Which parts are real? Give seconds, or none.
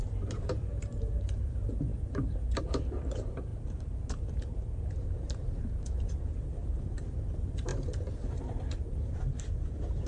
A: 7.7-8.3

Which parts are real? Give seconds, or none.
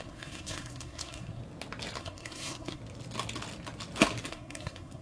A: 1.4-2.0; 2.8-4.3